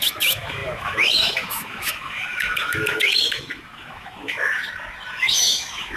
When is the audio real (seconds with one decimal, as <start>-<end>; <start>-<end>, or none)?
4.6-5.2